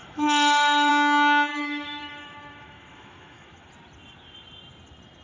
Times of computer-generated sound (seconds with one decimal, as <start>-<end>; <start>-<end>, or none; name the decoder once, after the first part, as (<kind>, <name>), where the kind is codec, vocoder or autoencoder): 0.0-0.9 (autoencoder, DAC-VAE); 1.5-3.7